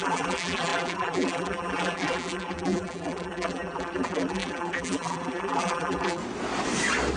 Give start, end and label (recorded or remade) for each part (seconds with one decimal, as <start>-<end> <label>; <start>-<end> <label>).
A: 0.0-6.2 remade; 6.2-7.2 recorded